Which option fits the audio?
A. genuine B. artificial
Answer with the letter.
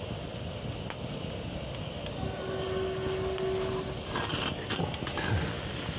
A